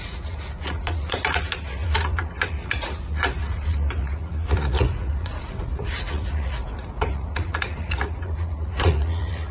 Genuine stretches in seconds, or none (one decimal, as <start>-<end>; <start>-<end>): none